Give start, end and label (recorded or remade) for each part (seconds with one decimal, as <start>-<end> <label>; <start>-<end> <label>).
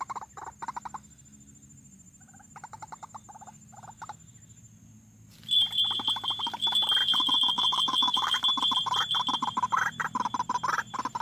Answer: 0.0-7.0 recorded; 7.0-8.4 remade; 8.4-11.2 recorded